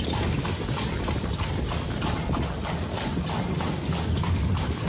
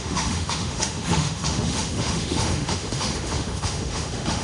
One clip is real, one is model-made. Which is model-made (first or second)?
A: second